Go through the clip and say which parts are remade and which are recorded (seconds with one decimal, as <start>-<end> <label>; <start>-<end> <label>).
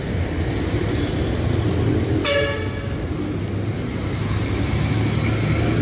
0.0-5.8 recorded